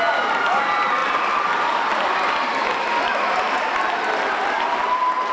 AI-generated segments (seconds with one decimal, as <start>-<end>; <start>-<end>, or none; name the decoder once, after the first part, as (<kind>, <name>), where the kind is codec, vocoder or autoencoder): none